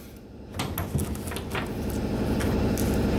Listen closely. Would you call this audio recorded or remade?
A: recorded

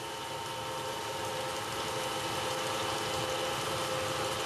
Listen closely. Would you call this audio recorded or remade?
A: recorded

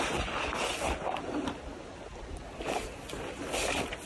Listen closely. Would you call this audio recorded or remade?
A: recorded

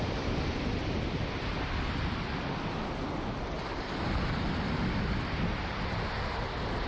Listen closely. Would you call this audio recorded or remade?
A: recorded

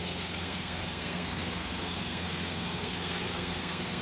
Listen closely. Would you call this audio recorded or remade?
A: remade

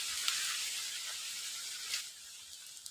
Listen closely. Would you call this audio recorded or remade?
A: recorded